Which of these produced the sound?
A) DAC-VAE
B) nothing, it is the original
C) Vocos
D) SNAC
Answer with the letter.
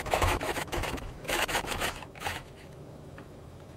A